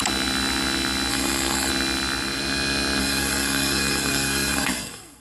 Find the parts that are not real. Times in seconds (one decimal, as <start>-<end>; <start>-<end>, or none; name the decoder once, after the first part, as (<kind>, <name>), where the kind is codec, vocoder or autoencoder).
1.1-1.7 (codec, SNAC); 3.0-5.2